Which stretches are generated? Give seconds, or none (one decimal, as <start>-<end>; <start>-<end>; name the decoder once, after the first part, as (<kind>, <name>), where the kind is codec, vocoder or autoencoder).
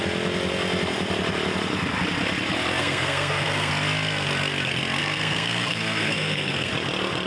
2.8-3.7 (codec, SNAC); 5.0-6.7